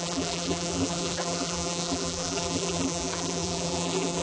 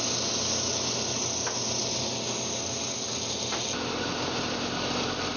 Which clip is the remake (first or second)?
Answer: first